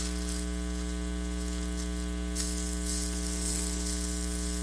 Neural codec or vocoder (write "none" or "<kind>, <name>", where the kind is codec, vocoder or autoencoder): none